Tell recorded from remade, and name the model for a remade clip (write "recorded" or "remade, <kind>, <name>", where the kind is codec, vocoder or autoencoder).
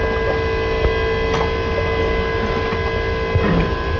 recorded